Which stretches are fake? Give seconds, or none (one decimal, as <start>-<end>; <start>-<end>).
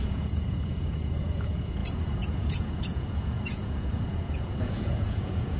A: 0.0-5.6